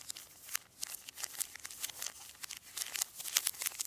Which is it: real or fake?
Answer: real